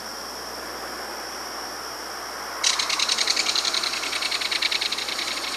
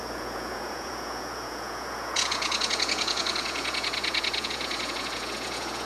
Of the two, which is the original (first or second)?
first